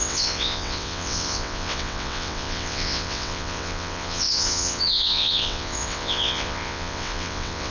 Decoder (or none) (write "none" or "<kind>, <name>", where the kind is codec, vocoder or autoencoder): vocoder, WaveNeXt